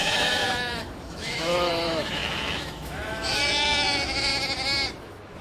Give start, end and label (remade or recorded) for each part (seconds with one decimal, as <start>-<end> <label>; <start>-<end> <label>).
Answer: 0.0-4.3 remade; 4.3-5.0 recorded; 5.0-5.4 remade